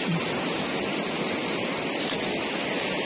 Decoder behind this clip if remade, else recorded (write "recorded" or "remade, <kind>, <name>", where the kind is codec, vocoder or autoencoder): recorded